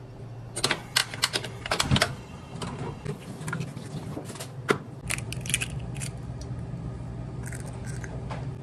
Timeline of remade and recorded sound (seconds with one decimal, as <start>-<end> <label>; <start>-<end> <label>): 0.0-1.0 recorded; 1.0-5.3 remade; 5.3-8.6 recorded